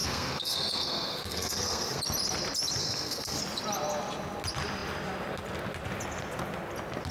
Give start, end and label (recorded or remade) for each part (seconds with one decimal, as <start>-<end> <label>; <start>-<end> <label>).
0.0-2.0 remade; 2.0-2.8 recorded; 2.8-3.4 remade; 3.4-7.1 recorded